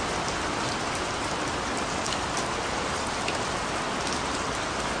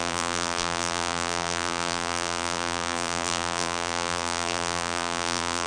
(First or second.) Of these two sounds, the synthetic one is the second